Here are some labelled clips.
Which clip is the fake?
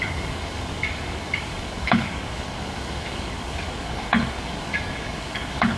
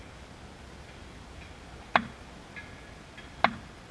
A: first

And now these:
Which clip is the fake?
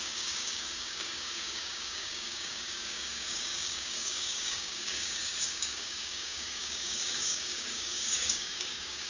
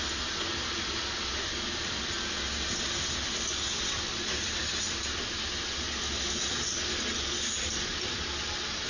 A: first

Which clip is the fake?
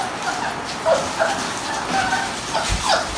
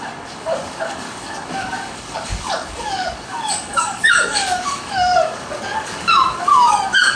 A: second